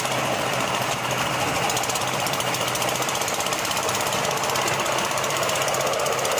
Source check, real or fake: fake